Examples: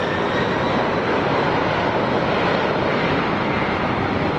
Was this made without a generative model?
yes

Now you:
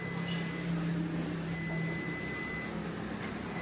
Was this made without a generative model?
yes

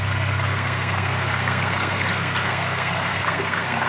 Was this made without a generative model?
no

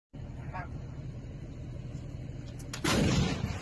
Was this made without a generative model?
yes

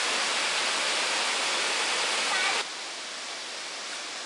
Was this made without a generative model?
yes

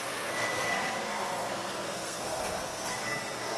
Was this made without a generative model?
no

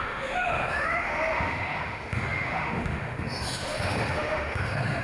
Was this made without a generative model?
no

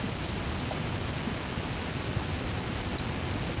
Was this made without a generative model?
yes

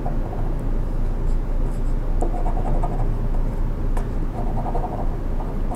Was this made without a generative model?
yes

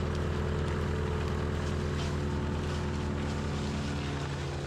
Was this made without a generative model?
yes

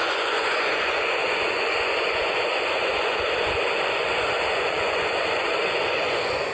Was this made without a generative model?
no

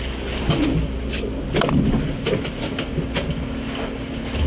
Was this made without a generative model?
yes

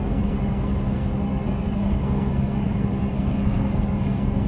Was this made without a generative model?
no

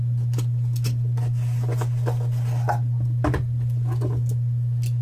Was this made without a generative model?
yes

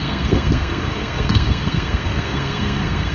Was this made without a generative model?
no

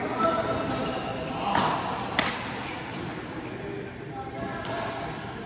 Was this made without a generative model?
yes